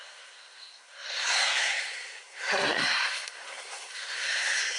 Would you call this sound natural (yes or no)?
no